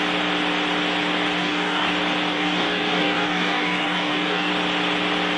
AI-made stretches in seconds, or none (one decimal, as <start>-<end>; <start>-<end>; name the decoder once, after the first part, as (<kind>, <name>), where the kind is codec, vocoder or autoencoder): 1.4-1.9 (codec, DAC); 2.3-4.5